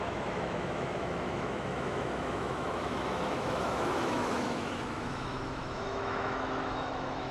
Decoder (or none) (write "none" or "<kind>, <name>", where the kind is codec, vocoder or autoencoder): autoencoder, DAC-VAE